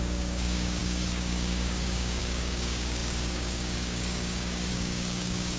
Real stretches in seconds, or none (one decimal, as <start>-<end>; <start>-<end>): none

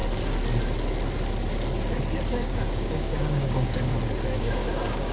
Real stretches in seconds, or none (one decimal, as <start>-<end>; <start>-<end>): 0.0-2.3; 3.9-4.4